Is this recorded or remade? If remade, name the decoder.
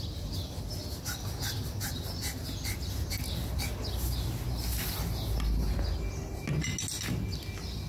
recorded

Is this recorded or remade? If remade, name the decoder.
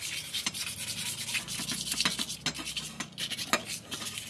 recorded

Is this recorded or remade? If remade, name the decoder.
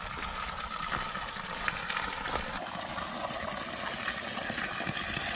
recorded